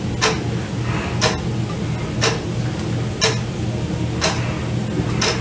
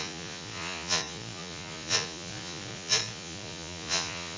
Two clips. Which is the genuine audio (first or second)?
first